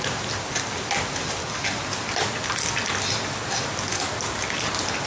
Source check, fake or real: real